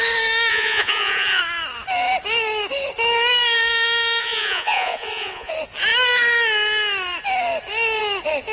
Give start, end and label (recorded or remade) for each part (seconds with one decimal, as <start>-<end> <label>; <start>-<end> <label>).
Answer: 0.0-0.5 recorded; 0.5-1.4 remade; 1.4-4.2 recorded; 4.2-5.5 remade; 5.5-8.5 recorded